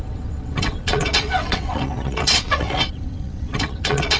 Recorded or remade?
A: remade